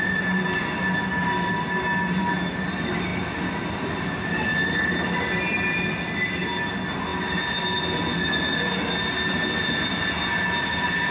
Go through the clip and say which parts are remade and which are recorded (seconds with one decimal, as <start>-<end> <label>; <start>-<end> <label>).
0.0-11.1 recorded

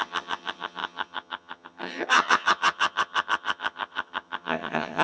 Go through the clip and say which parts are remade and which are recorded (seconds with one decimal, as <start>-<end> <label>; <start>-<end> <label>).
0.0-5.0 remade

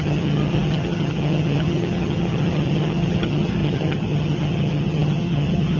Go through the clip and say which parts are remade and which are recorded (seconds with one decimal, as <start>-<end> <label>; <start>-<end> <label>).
0.0-5.8 remade